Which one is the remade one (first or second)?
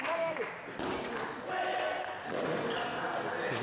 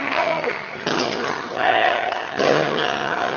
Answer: second